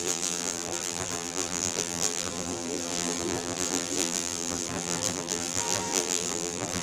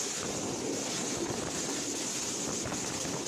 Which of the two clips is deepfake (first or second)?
first